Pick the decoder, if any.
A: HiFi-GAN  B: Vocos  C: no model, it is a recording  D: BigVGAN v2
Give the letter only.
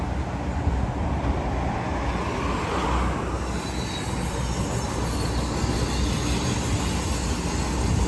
C